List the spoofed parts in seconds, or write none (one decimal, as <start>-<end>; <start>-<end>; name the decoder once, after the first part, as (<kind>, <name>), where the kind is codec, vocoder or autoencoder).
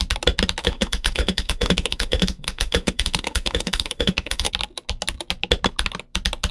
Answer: 0.6-4.5 (autoencoder, DAC-VAE)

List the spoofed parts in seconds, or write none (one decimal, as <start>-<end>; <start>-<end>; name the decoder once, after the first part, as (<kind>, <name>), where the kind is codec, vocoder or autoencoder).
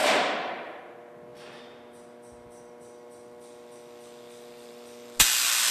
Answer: 0.0-0.8 (vocoder, BigVGAN v2)